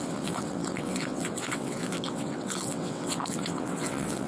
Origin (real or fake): fake